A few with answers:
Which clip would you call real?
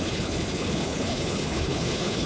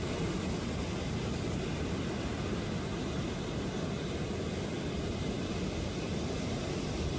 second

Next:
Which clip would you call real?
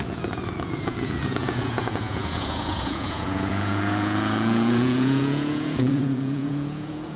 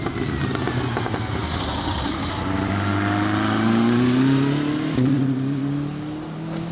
second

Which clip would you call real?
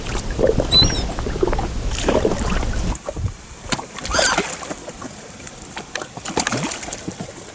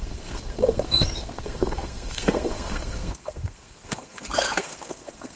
first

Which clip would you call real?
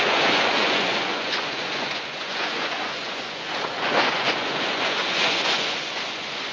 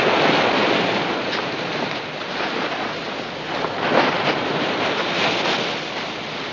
second